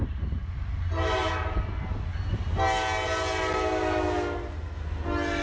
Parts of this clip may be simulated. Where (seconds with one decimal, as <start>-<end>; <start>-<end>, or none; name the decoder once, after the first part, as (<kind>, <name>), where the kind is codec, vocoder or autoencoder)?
none